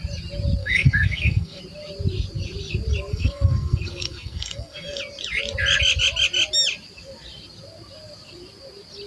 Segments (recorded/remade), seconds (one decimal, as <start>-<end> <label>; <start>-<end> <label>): 0.0-0.6 recorded; 0.6-1.6 remade; 1.6-3.1 recorded; 3.1-5.0 remade; 5.0-9.1 recorded